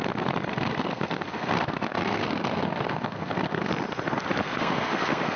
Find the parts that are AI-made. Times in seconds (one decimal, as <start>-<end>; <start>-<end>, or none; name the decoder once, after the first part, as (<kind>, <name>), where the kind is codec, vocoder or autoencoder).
0.5-3.7 (codec, SNAC); 4.4-5.4